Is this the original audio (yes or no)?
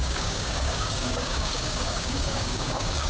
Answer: no